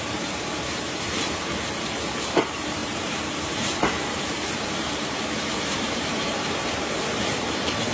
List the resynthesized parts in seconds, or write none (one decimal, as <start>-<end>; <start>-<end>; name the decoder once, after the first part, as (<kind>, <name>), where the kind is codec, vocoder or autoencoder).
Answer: 0.0-7.9 (vocoder, BigVGAN v2)